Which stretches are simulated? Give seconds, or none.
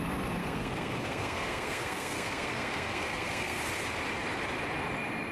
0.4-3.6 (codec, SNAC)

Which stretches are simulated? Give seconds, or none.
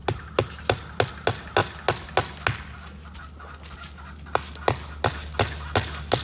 none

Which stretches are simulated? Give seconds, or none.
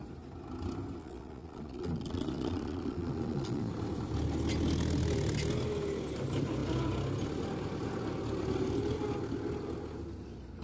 1.0-3.7 (vocoder, Vocos)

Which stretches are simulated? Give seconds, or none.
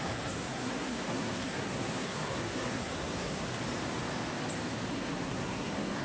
0.0-3.4 (codec, SNAC); 4.9-6.0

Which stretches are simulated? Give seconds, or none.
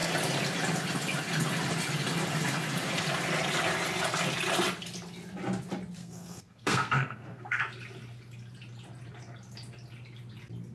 6.0-7.6 (codec, SNAC)